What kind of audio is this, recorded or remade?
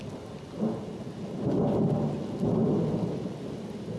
recorded